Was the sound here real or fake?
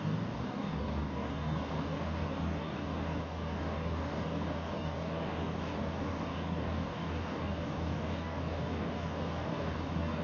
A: fake